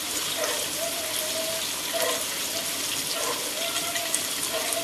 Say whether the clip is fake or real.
real